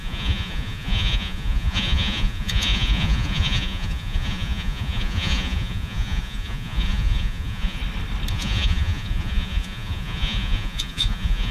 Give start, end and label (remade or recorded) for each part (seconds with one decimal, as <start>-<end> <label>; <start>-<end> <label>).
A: 0.0-7.8 remade; 7.8-8.3 recorded; 8.3-11.5 remade